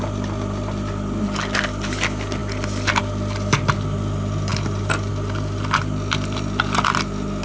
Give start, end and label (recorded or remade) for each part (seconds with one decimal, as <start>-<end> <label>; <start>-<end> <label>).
0.0-7.4 recorded